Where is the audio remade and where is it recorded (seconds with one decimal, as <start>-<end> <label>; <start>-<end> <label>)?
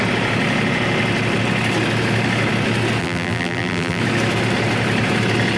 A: 0.0-3.0 recorded; 3.0-4.0 remade; 4.0-5.6 recorded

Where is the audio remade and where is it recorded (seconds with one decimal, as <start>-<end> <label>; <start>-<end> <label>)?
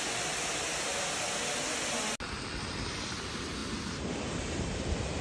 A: 0.0-5.2 recorded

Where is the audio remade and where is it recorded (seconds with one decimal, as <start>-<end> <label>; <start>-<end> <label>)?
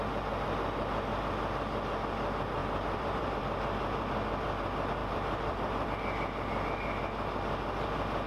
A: 0.0-2.6 recorded; 2.6-3.4 remade; 3.4-5.0 recorded; 5.0-5.9 remade; 5.9-8.3 recorded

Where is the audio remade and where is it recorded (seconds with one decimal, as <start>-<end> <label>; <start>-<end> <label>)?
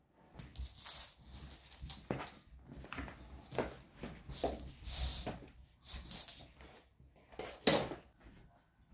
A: 0.0-5.1 recorded; 5.1-5.9 remade; 5.9-8.9 recorded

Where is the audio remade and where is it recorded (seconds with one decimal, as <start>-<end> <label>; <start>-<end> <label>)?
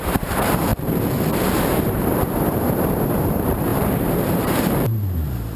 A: 0.0-0.7 remade; 0.7-1.9 recorded; 1.9-5.6 remade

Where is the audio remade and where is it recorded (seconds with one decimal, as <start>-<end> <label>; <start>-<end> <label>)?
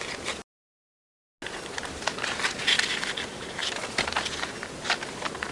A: 0.0-5.5 recorded